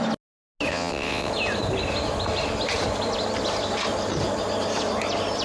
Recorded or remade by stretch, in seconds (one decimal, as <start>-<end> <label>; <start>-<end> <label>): 0.0-0.7 recorded; 0.7-1.3 remade; 1.3-5.4 recorded